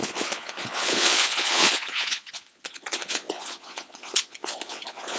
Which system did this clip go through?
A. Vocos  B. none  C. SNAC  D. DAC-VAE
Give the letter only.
A